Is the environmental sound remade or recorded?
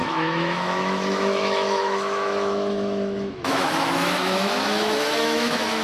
remade